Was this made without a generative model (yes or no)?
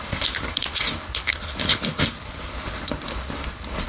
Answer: no